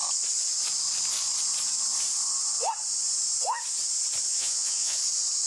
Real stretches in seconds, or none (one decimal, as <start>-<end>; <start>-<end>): 0.0-4.3; 5.0-5.5